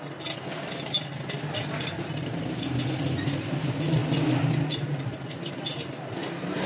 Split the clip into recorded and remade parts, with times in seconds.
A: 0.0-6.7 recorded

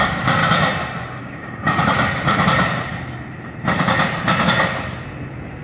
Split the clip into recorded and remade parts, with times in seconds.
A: 0.0-0.4 remade; 0.4-1.2 recorded; 1.2-1.8 remade; 1.8-5.6 recorded

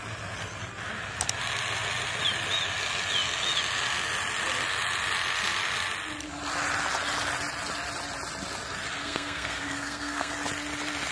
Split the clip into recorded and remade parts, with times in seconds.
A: 0.0-9.0 recorded; 9.0-10.3 remade; 10.3-11.1 recorded

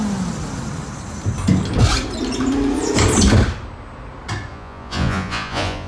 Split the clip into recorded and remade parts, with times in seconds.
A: 0.0-4.5 recorded; 4.5-5.9 remade

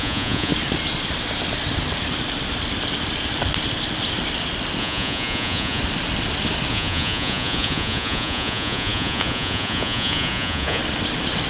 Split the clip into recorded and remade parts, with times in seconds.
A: 0.0-0.5 remade; 0.5-4.8 recorded; 4.8-5.8 remade; 5.8-6.7 recorded; 6.7-10.8 remade; 10.8-11.5 recorded

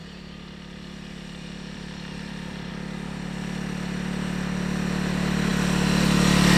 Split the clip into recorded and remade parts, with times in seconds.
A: 0.0-2.7 remade; 2.7-6.6 recorded

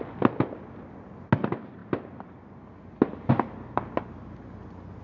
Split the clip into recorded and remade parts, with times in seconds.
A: 0.0-5.0 recorded

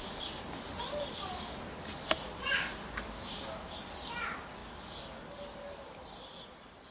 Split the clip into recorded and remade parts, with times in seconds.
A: 0.0-6.9 recorded